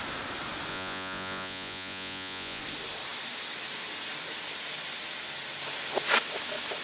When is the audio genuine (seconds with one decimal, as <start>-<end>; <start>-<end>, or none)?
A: 0.0-0.7; 2.6-6.8